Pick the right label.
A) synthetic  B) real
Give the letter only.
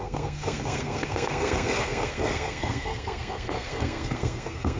A